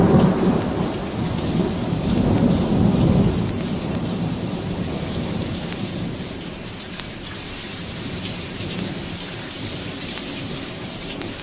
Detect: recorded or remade remade